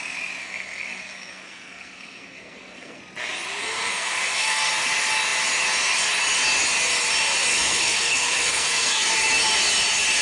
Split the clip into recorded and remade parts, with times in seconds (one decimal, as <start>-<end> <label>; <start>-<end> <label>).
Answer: 0.0-0.4 recorded; 0.4-3.0 remade; 3.0-3.6 recorded; 3.6-4.7 remade; 4.7-7.5 recorded; 7.5-9.1 remade; 9.1-10.2 recorded